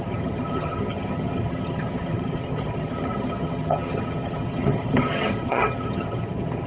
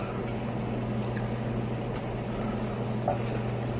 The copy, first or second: first